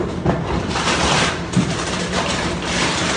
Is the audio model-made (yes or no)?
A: yes